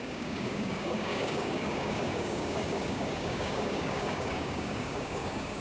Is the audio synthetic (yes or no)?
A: yes